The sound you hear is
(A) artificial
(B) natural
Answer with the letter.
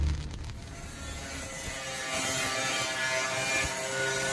B